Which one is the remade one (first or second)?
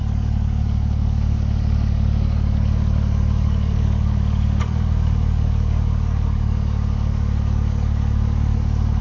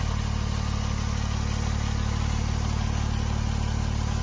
first